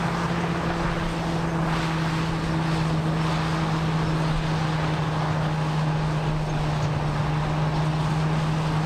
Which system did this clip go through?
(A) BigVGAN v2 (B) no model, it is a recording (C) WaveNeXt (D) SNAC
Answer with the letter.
B